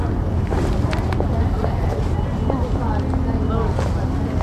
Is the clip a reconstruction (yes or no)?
no